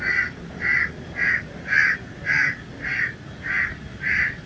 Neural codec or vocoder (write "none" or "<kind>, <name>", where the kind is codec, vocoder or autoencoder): none